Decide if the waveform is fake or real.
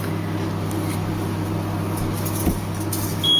real